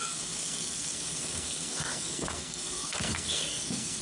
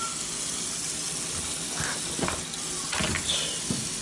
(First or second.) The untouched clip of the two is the second